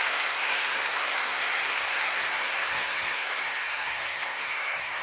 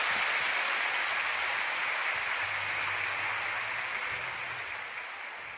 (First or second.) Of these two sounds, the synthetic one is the first